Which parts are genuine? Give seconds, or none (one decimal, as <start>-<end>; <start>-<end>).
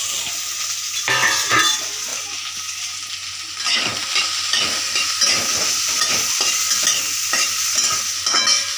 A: 0.0-8.8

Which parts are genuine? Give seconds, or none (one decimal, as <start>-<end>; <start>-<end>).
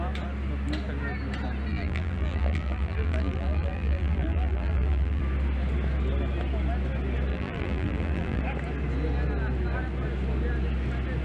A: 0.0-1.7; 5.2-7.3; 8.4-11.2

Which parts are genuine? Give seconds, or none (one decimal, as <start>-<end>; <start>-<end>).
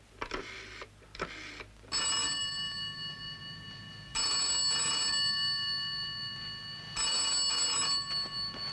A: 0.0-8.7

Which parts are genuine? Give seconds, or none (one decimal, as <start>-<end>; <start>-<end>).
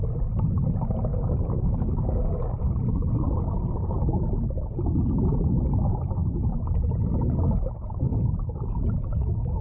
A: 0.0-1.1; 2.5-9.6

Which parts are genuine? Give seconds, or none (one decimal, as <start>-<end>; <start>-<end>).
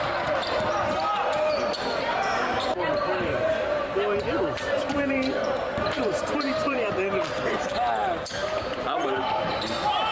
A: 0.0-2.5; 6.8-8.4; 9.7-10.1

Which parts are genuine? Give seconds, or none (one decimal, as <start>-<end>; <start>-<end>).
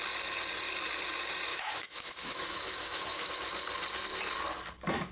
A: 0.0-1.5; 3.3-5.1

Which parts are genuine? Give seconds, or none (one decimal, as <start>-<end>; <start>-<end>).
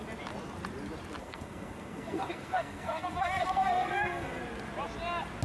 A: 0.0-1.2; 4.4-5.4